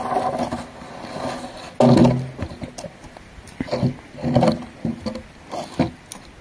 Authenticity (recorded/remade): recorded